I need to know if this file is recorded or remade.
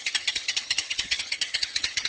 remade